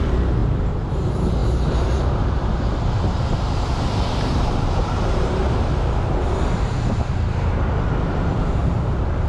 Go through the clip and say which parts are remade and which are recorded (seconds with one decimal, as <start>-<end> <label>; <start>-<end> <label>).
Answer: 0.0-5.4 remade; 5.4-6.0 recorded; 6.0-9.3 remade